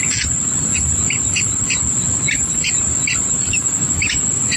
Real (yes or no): yes